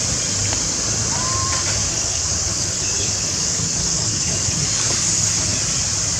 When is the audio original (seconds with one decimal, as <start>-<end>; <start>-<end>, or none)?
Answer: 0.0-1.8; 4.9-6.2